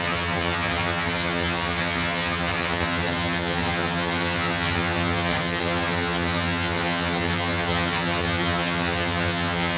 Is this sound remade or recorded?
remade